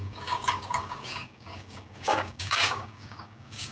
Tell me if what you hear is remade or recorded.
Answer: remade